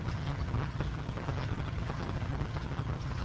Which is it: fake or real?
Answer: fake